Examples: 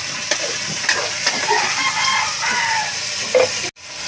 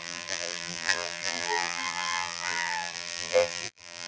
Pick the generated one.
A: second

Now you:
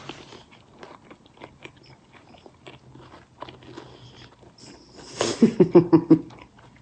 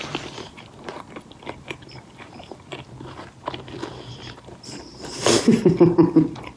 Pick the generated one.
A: second